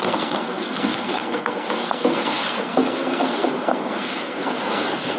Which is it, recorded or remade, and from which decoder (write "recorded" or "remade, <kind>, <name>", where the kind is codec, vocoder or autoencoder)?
remade, codec, SNAC